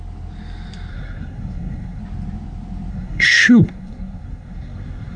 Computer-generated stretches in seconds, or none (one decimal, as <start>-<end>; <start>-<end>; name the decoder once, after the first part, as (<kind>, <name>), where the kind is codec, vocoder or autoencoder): 0.9-2.0 (codec, SNAC); 2.9-5.2